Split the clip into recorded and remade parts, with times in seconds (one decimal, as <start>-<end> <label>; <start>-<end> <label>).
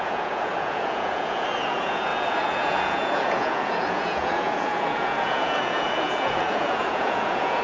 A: 0.0-7.6 remade